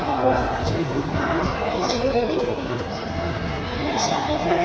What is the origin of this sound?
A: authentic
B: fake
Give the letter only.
B